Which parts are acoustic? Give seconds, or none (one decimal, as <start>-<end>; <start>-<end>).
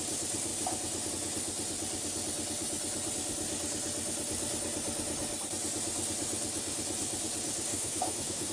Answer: 0.0-7.7